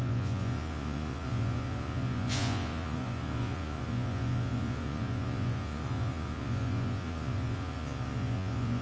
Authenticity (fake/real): fake